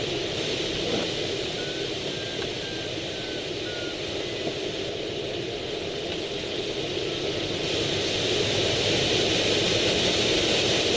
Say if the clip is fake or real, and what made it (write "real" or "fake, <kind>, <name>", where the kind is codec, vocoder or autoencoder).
real